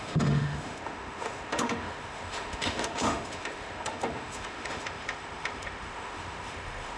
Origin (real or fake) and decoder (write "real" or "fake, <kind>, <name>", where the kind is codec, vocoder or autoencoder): fake, autoencoder, DAC-VAE